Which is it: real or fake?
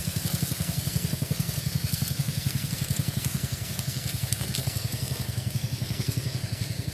fake